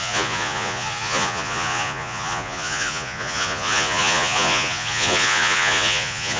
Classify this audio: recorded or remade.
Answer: remade